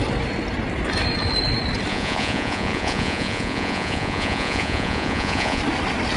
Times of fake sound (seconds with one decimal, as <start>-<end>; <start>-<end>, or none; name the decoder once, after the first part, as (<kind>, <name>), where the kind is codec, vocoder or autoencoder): 1.9-5.6 (vocoder, Vocos)